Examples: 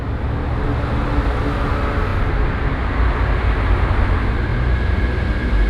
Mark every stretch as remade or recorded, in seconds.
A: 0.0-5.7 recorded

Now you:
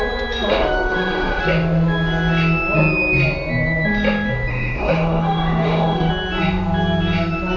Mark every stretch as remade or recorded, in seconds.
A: 0.0-0.5 recorded; 0.5-1.4 remade; 1.4-4.5 recorded; 4.5-6.1 remade; 6.1-7.6 recorded

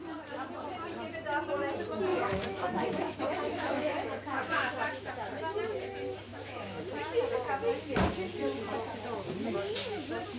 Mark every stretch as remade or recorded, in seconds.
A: 0.0-2.1 recorded; 2.1-5.1 remade; 5.1-6.3 recorded; 6.3-6.8 remade; 6.8-10.4 recorded

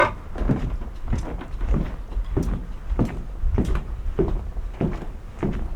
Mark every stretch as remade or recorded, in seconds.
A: 0.0-5.8 recorded